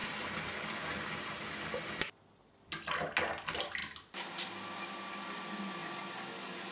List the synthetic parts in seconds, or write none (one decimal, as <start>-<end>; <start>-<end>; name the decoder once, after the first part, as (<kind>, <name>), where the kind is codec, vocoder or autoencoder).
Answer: none